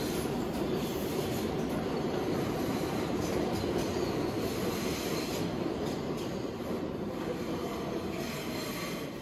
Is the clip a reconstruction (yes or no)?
no